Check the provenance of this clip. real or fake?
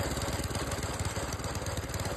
real